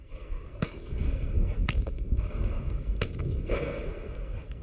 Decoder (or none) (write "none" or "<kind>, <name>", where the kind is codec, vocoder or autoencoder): codec, SNAC